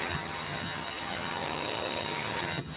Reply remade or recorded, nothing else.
remade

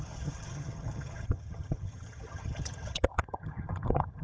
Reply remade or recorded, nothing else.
remade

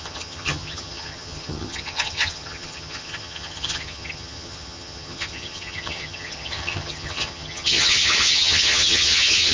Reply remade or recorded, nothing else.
remade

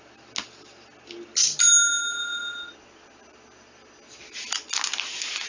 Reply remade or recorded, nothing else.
recorded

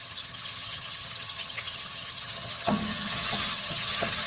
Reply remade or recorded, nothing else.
remade